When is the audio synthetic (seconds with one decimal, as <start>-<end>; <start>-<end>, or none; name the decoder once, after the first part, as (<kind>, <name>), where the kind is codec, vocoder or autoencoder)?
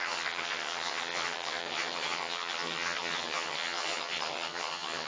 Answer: 0.0-5.1 (vocoder, HiFi-GAN)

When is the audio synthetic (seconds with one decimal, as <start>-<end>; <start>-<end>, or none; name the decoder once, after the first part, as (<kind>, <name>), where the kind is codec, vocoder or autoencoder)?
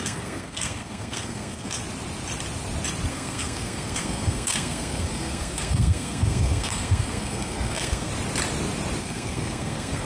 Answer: 0.0-1.8 (codec, SNAC); 3.1-8.1; 9.0-10.0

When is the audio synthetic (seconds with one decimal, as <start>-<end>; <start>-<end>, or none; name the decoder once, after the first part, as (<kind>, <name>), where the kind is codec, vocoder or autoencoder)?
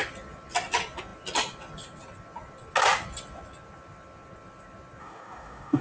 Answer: 5.0-5.8 (codec, DAC)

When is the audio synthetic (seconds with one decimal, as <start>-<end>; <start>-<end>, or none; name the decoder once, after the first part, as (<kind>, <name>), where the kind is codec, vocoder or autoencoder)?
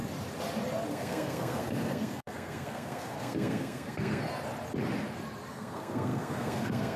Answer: 0.9-4.2 (codec, SNAC); 5.5-7.0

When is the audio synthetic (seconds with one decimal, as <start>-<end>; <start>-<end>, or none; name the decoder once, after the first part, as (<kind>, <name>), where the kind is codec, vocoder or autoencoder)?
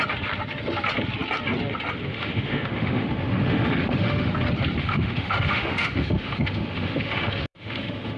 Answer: 2.1-4.3 (autoencoder, DAC-VAE); 4.8-8.2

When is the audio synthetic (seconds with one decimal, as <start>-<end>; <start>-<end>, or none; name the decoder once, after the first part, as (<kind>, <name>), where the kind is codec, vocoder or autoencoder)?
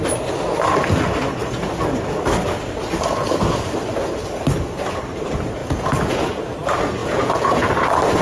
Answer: 5.6-6.3 (vocoder, Vocos); 7.0-7.7